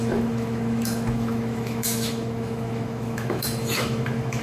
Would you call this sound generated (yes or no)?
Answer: yes